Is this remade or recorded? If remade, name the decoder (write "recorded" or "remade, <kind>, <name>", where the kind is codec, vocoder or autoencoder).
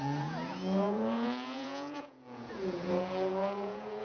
remade, vocoder, Vocos